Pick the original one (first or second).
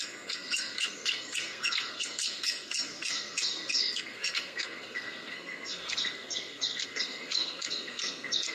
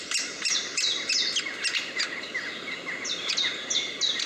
second